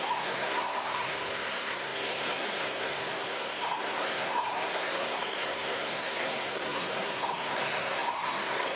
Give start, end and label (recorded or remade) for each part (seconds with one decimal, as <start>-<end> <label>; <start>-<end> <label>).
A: 0.0-8.8 remade